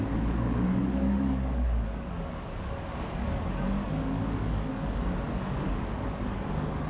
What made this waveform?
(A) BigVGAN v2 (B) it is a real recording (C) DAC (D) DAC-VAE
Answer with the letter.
C